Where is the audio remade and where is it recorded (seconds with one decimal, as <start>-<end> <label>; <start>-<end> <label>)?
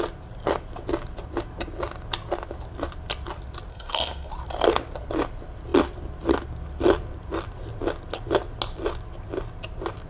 0.0-3.7 recorded; 3.7-4.3 remade; 4.3-10.1 recorded